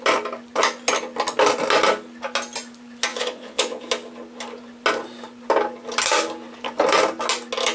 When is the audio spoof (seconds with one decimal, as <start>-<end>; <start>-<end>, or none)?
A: 3.1-3.8